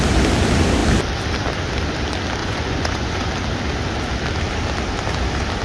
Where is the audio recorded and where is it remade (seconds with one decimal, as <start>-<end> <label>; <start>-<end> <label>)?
0.0-2.4 recorded; 2.4-3.3 remade; 3.3-5.6 recorded